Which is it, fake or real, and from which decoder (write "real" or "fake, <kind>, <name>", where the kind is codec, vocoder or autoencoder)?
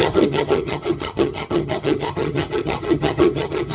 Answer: fake, vocoder, HiFi-GAN